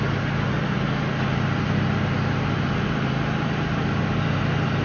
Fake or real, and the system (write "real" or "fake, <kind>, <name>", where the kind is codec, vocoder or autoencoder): real